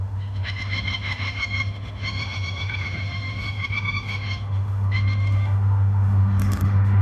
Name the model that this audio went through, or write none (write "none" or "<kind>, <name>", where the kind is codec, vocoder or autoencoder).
autoencoder, DAC-VAE